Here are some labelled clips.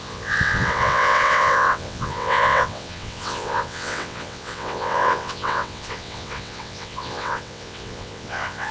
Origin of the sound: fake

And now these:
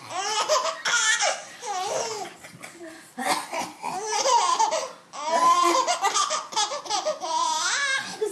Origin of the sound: real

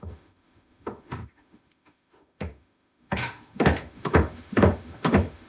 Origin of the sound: fake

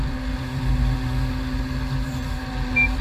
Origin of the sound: fake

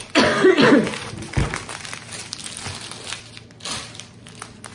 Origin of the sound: real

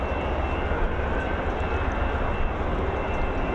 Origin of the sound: real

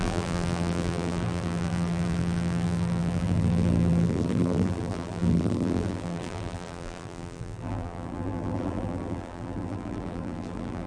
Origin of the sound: fake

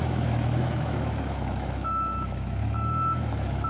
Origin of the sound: fake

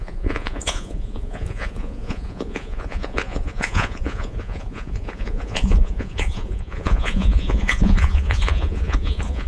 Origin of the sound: fake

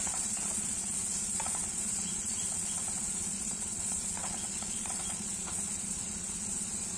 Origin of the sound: fake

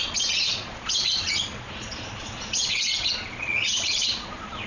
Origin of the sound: fake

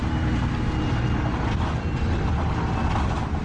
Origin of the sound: real